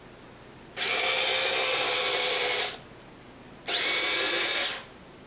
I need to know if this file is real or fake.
real